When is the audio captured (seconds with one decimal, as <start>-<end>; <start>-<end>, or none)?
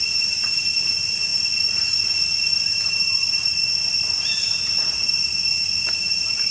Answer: 0.0-6.5